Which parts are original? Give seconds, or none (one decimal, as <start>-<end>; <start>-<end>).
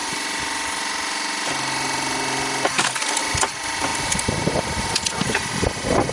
0.0-6.1